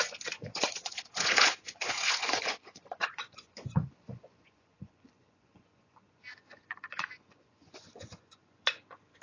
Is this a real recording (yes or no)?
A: no